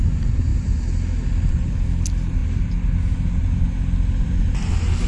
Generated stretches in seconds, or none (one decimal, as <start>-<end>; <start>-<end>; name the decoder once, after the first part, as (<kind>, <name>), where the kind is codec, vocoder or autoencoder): none